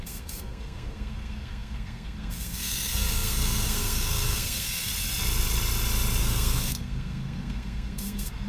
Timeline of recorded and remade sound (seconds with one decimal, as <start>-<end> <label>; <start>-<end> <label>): 0.0-4.9 remade; 4.9-6.2 recorded; 6.2-8.5 remade

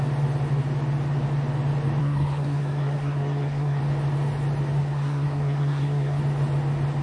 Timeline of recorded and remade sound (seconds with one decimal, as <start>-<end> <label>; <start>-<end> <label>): 0.0-2.0 recorded; 2.0-3.8 remade; 3.8-4.8 recorded; 4.8-6.2 remade; 6.2-7.0 recorded

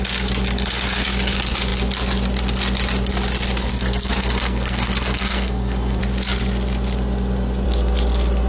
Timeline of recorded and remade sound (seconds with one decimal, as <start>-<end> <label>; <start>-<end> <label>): 0.0-3.7 recorded; 3.7-6.0 remade; 6.0-8.5 recorded

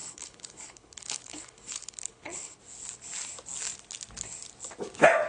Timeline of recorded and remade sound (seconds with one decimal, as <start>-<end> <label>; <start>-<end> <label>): 0.0-2.6 remade; 2.6-5.3 recorded

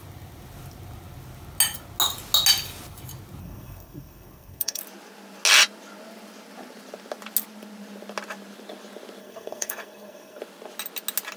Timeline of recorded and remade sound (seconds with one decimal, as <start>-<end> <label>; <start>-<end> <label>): 0.0-3.4 recorded; 3.4-4.8 remade; 4.8-9.2 recorded; 9.2-10.4 remade; 10.4-11.4 recorded

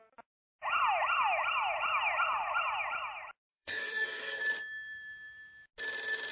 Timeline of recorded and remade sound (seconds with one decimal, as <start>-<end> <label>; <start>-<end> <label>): 0.0-3.5 recorded; 3.5-4.4 remade; 4.4-6.3 recorded

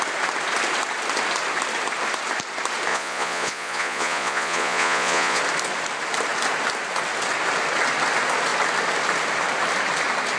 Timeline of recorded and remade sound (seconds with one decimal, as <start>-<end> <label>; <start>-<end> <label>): 0.0-2.9 recorded; 2.9-5.4 remade; 5.4-10.4 recorded

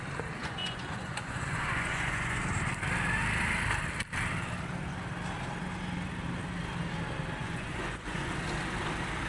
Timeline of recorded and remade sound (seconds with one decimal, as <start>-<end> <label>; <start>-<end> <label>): 0.0-0.4 recorded; 0.4-2.4 remade; 2.4-7.4 recorded; 7.4-8.3 remade; 8.3-9.3 recorded